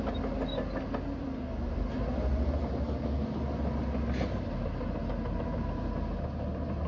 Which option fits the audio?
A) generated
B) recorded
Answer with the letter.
B